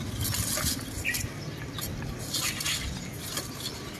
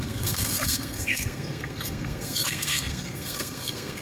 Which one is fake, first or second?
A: second